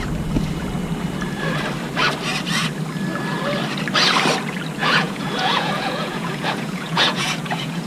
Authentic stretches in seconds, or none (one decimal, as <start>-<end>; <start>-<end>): 0.0-4.8